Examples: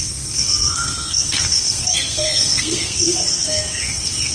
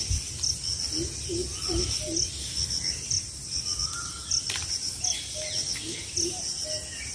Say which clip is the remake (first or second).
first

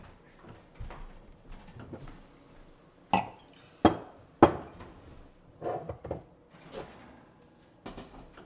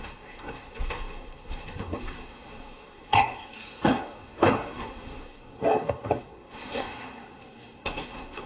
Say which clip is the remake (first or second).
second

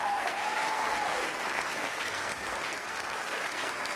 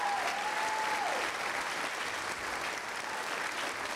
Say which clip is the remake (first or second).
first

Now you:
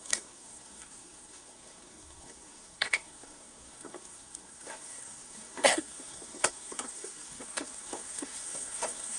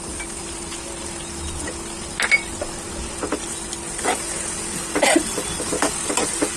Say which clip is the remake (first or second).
first